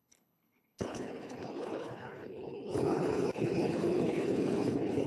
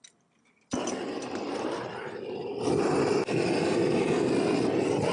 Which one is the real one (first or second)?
second